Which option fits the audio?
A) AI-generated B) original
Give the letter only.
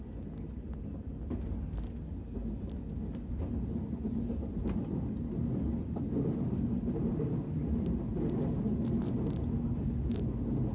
B